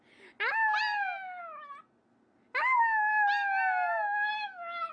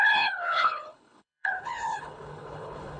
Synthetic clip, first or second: second